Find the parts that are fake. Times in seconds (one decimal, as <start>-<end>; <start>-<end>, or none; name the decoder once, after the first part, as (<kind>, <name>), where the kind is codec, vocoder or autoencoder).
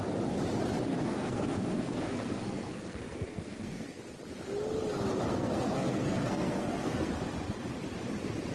0.9-4.0 (codec, SNAC); 5.3-7.1